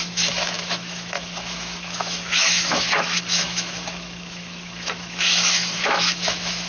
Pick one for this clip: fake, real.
fake